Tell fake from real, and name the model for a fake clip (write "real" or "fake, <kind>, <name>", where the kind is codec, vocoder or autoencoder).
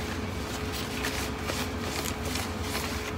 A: real